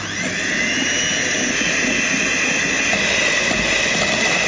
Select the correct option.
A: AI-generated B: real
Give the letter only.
B